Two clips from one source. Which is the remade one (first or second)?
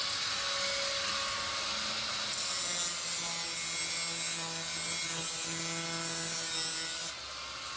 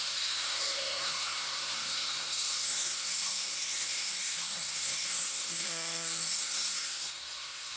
second